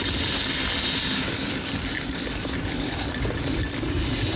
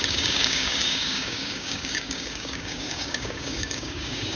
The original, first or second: first